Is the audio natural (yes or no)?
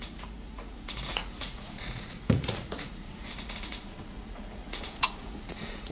no